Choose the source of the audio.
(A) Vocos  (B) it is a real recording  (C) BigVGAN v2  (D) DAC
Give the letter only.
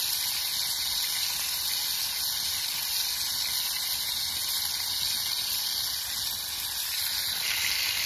B